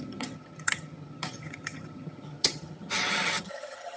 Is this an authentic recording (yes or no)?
no